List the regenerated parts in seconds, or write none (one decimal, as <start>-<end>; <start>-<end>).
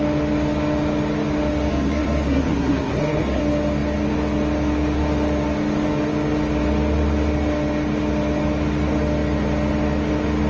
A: 1.7-3.4